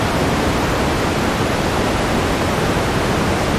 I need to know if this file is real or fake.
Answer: real